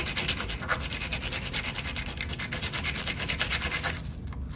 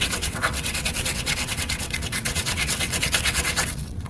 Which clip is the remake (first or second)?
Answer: second